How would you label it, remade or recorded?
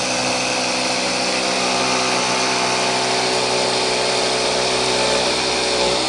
recorded